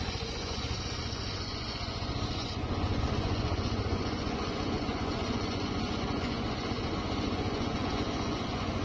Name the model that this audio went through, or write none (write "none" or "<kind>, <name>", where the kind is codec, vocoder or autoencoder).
vocoder, Vocos